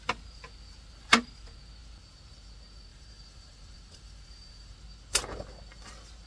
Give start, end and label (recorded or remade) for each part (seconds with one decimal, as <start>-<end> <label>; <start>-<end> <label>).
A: 0.0-2.9 recorded; 2.9-4.8 remade; 4.8-6.3 recorded